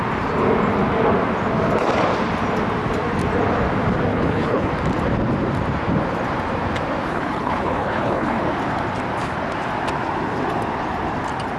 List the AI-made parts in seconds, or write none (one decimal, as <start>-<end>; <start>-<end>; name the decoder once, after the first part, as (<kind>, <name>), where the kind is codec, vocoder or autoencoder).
4.1-4.7 (codec, HILCodec); 7.1-8.4